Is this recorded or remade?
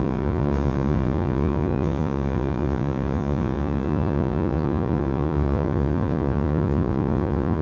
remade